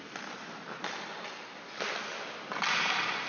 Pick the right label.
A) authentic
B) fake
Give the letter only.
A